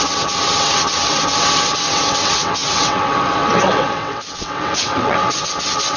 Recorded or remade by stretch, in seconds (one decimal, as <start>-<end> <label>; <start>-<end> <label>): 0.0-6.0 remade